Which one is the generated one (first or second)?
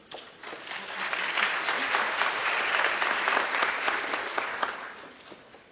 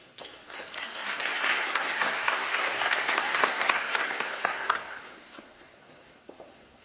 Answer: second